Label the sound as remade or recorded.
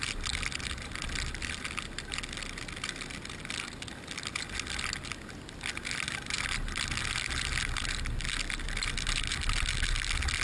recorded